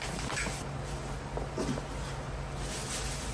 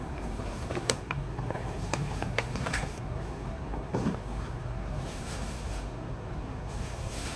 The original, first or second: first